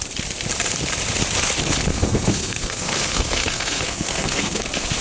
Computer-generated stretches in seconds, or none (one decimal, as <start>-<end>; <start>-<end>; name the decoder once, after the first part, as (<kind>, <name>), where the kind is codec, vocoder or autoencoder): 1.9-5.0 (codec, SNAC)